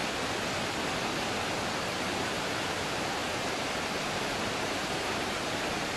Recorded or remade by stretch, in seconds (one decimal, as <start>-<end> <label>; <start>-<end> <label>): 0.0-2.1 recorded; 2.1-6.0 remade